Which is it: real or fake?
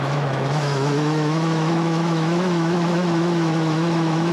fake